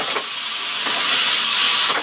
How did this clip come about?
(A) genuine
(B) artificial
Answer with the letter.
A